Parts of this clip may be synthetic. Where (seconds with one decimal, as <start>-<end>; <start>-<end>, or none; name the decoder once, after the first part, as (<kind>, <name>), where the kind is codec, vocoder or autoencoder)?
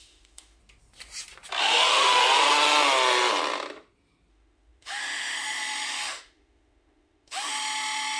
0.0-0.6 (autoencoder, DAC-VAE); 1.6-2.2; 4.3-8.2